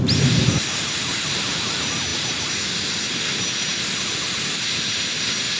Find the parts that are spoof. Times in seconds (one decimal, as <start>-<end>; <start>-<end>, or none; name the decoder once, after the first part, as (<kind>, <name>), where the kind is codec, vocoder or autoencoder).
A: none